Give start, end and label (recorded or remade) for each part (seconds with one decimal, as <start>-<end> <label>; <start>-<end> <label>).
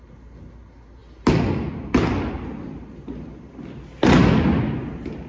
0.0-5.3 recorded